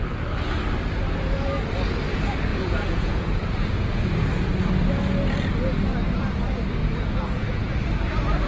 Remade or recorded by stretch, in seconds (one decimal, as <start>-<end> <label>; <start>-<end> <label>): 0.0-2.5 recorded; 2.5-4.0 remade; 4.0-6.8 recorded; 6.8-7.7 remade; 7.7-8.5 recorded

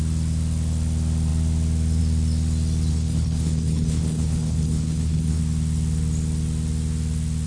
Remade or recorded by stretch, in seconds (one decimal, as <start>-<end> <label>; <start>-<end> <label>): 0.0-2.9 recorded; 2.9-5.4 remade; 5.4-7.5 recorded

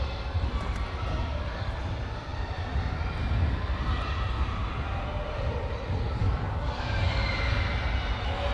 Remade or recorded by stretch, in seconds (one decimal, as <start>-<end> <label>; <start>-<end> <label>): 0.0-6.2 recorded; 6.2-7.0 remade; 7.0-8.5 recorded

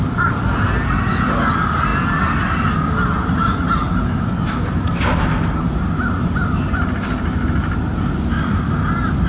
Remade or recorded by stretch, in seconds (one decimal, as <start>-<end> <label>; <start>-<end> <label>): 0.0-9.3 recorded

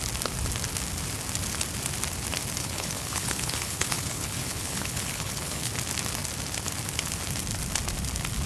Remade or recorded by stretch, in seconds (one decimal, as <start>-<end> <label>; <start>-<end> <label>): 0.0-2.6 recorded; 2.6-5.7 remade; 5.7-8.5 recorded

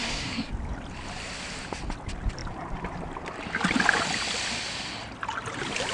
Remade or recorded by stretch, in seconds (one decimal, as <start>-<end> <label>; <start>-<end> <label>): 0.0-0.5 remade; 0.5-5.9 recorded

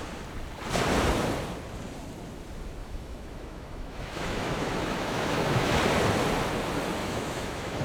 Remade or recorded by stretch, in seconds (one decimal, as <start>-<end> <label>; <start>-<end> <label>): 0.0-2.8 recorded; 2.8-5.8 remade; 5.8-7.0 recorded; 7.0-7.8 remade